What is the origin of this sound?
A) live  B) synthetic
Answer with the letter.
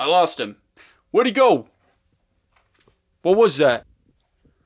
A